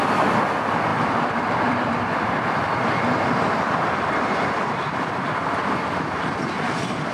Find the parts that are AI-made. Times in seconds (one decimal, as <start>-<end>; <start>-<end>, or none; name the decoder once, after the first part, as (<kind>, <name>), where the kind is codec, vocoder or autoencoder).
0.9-2.6 (vocoder, BigVGAN v2)